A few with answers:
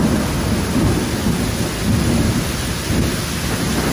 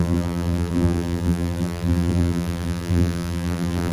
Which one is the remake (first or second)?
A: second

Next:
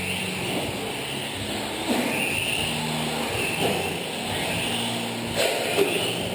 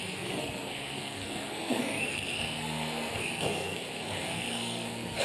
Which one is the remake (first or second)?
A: second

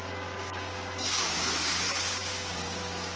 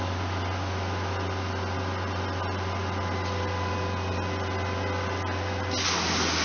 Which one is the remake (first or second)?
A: first